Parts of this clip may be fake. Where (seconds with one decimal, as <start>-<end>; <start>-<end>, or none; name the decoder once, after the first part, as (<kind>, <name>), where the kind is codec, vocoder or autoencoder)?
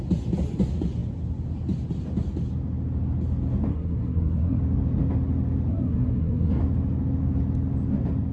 3.7-4.6 (codec, SNAC); 5.7-6.6